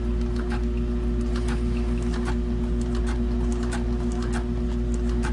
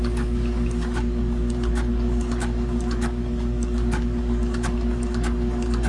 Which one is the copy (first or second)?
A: second